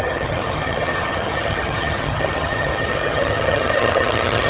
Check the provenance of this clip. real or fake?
fake